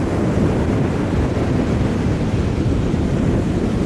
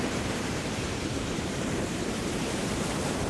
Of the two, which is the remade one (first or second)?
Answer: second